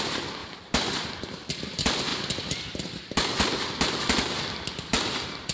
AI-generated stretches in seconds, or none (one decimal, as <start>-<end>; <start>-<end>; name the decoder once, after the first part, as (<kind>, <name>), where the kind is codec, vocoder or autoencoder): 0.4-1.1 (vocoder, BigVGAN v2)